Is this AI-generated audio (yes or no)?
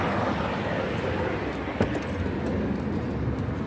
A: no